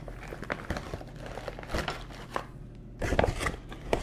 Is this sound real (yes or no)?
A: yes